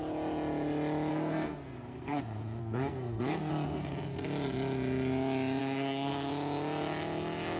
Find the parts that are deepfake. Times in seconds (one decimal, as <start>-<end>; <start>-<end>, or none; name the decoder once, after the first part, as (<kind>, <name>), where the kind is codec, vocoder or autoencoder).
1.1-2.2 (codec, SNAC); 2.6-3.5; 5.6-6.3